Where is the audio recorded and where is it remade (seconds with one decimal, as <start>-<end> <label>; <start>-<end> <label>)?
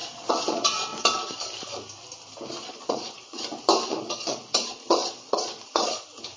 0.0-1.3 remade; 1.3-2.5 recorded; 2.5-3.4 remade; 3.4-3.9 recorded; 3.9-6.0 remade; 6.0-6.4 recorded